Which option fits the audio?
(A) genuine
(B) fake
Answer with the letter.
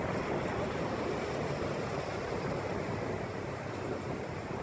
A